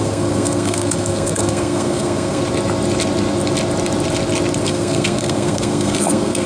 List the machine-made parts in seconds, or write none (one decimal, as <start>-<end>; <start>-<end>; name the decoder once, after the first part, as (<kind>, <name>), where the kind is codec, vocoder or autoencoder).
0.0-2.4 (codec, SNAC); 4.6-6.5